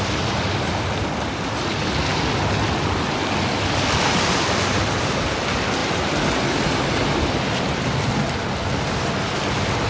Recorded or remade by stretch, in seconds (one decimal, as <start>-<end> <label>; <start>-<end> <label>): 0.0-9.9 recorded